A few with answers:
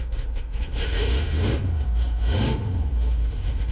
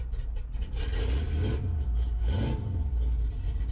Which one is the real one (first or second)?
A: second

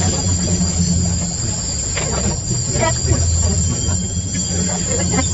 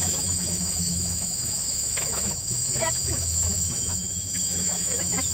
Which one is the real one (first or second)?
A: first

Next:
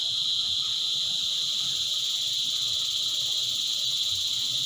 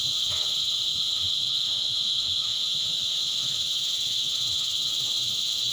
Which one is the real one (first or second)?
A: first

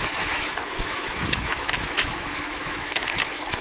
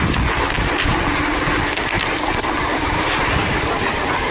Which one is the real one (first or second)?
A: second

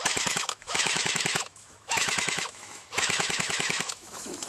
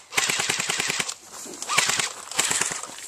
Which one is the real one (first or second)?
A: second